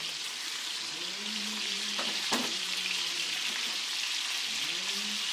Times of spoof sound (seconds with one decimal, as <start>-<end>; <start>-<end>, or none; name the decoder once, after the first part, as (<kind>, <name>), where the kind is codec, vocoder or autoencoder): 0.7-3.9 (vocoder, BigVGAN v2)